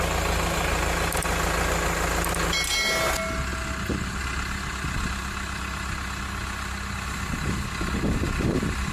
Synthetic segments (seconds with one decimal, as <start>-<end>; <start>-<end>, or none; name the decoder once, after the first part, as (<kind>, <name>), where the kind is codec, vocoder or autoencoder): none